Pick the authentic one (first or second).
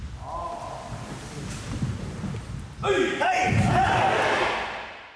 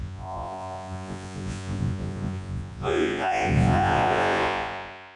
first